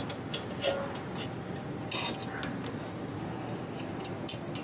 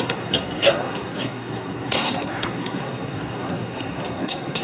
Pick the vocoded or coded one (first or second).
second